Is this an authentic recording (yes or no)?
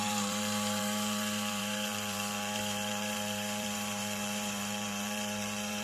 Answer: no